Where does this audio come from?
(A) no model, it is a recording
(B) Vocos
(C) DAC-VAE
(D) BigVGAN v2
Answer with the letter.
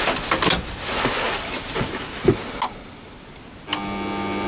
A